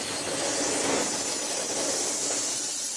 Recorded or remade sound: recorded